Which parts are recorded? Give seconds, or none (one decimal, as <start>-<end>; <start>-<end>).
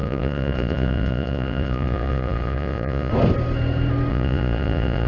3.1-4.1